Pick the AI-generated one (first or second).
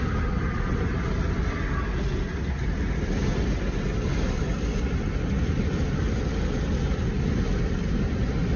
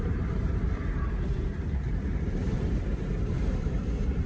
second